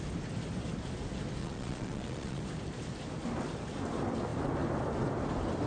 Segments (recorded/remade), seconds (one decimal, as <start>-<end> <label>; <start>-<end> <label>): 0.0-1.4 recorded; 1.4-2.4 remade; 2.4-5.7 recorded